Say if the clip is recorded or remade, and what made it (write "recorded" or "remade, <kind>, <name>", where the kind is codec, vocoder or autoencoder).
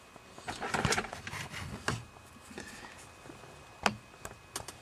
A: recorded